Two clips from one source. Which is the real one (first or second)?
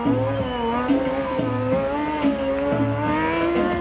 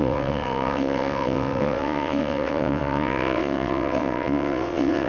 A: first